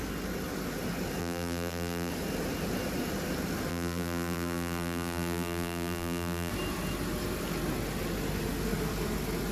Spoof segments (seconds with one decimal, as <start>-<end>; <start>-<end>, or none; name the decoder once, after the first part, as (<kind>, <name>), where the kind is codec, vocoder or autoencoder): 1.2-2.1 (vocoder, BigVGAN v2); 3.7-6.5